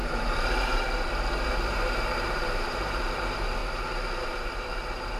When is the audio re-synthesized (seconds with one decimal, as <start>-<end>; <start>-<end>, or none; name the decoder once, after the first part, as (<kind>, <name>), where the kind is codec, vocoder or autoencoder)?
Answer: 0.0-3.6 (vocoder, BigVGAN v2); 4.2-5.2